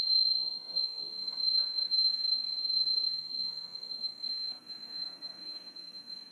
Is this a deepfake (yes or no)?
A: yes